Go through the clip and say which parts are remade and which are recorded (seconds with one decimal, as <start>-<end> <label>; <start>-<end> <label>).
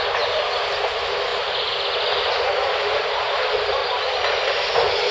0.0-1.3 remade; 1.3-2.3 recorded; 2.3-3.8 remade; 3.8-5.1 recorded